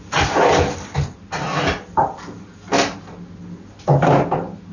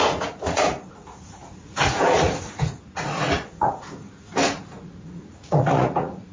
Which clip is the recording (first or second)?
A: first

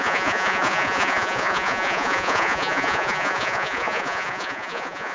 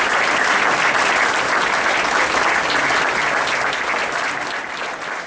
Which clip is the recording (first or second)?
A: second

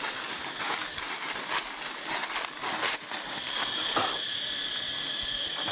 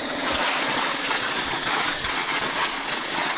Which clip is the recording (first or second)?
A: first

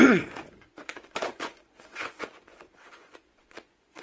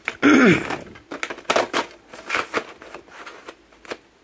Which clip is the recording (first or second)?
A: second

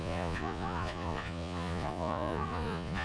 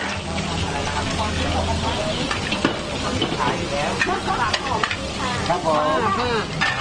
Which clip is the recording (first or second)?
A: second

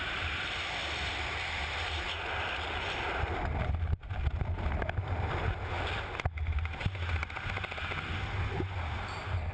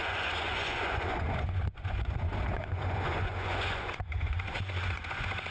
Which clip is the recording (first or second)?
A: first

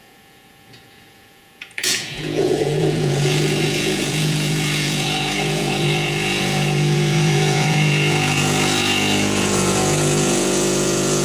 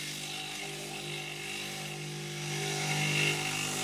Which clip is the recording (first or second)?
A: second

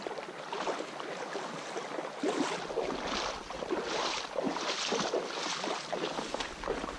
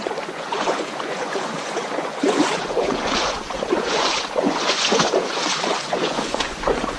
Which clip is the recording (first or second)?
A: first